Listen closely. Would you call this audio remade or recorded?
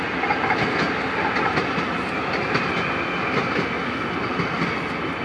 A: recorded